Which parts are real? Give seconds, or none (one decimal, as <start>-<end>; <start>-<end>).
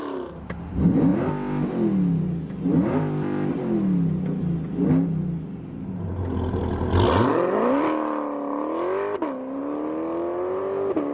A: 0.0-11.1